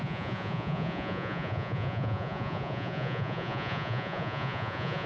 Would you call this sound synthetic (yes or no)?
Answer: yes